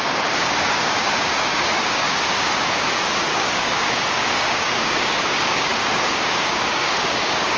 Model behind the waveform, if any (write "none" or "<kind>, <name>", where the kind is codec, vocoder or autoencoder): codec, DAC